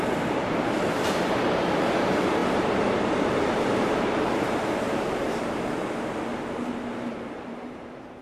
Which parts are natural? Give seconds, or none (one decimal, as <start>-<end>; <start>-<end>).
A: 5.8-7.1